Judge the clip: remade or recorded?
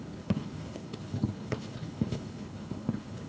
remade